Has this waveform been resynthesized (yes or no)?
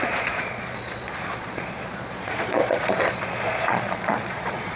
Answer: yes